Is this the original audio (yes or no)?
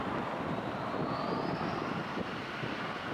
yes